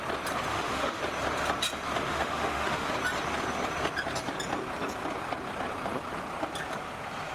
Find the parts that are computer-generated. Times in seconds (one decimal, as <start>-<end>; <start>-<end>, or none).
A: 0.5-1.0; 2.1-2.9